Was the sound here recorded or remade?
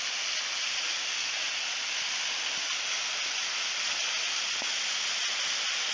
recorded